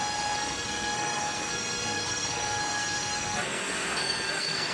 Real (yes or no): no